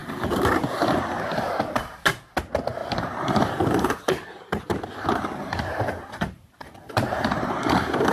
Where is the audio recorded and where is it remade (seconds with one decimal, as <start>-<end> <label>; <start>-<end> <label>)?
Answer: 0.0-2.8 recorded; 2.8-8.1 remade